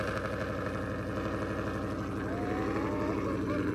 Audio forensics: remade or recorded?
recorded